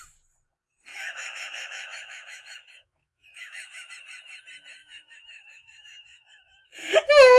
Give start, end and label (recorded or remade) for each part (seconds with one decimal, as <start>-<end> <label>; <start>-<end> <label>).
0.0-0.9 recorded; 0.9-3.9 remade; 3.9-4.8 recorded; 4.8-7.4 remade